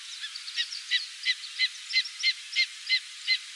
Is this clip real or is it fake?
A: real